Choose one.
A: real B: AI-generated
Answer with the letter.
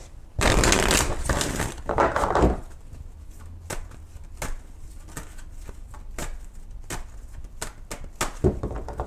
A